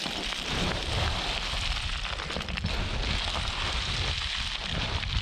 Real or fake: real